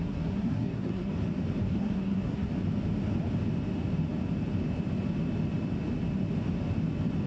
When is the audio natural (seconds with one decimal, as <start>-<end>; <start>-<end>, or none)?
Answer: 1.1-1.6; 2.5-7.3